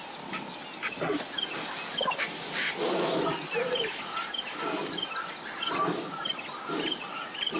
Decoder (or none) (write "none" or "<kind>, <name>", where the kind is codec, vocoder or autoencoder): none